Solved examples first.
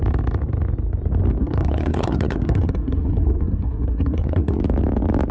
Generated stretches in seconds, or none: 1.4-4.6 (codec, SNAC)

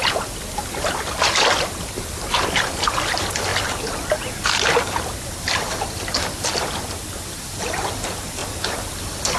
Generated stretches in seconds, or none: none

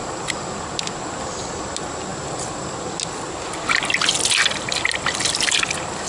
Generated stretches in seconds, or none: none

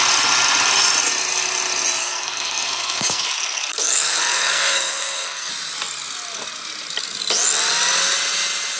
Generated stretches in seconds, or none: 2.0-5.5 (codec, SNAC)

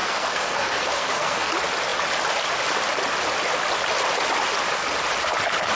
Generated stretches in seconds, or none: 0.0-1.5 (codec, SNAC)

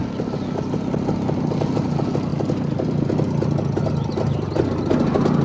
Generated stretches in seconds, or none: none

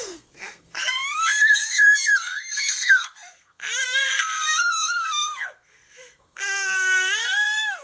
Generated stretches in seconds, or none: 0.0-7.8 (codec, SNAC)

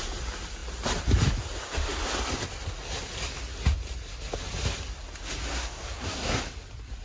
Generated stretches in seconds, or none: 5.5-6.4 (codec, SNAC)